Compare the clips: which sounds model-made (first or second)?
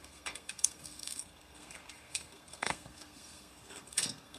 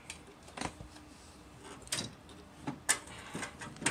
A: first